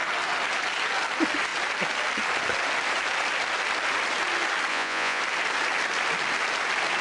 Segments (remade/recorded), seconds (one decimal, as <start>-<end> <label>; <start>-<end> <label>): 0.0-4.7 recorded; 4.7-5.2 remade; 5.2-7.0 recorded